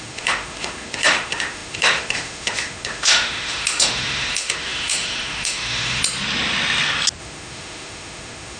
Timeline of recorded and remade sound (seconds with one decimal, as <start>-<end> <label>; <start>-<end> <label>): 0.0-6.0 remade; 6.0-7.2 recorded; 7.2-8.6 remade